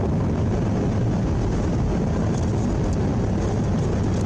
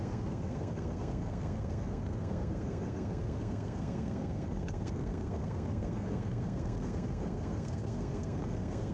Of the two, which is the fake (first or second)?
second